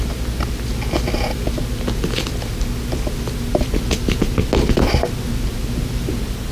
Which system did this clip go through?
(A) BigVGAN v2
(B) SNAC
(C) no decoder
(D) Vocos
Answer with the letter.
C